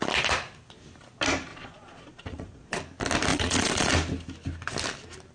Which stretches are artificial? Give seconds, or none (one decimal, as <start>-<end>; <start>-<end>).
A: 1.5-2.8; 3.3-3.9